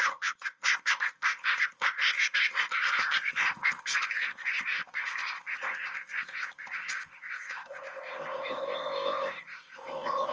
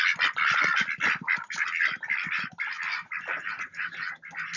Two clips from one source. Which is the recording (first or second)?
second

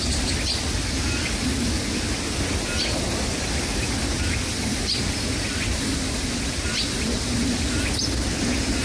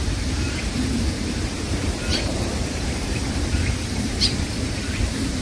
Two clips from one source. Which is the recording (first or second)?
first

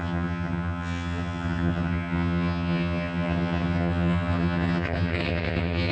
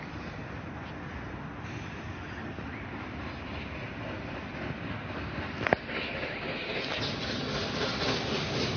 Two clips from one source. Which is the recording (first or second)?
second